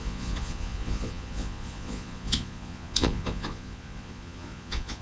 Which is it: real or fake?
fake